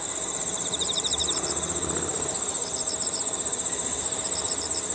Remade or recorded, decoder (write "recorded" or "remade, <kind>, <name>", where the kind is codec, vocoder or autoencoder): recorded